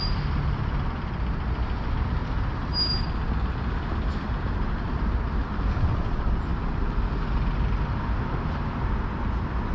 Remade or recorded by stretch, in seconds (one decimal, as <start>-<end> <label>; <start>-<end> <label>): 0.0-9.7 recorded